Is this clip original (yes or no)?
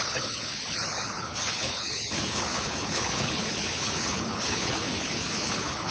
no